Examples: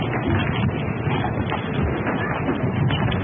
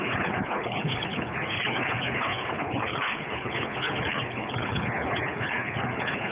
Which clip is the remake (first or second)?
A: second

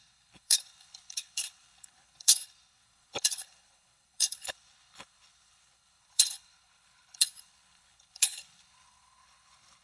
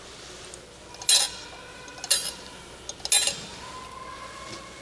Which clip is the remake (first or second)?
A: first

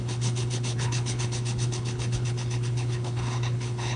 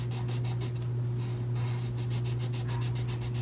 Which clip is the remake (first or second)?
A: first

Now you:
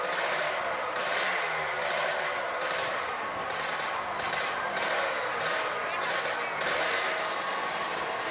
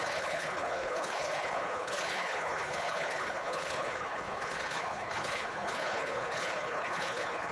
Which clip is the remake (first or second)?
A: second